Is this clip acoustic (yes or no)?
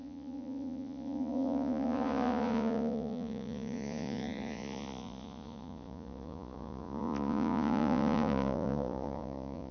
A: no